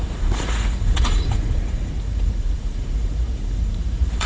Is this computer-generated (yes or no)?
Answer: yes